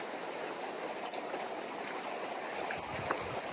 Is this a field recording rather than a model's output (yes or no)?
yes